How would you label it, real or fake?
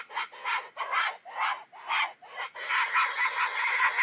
real